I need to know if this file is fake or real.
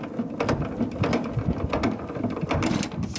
fake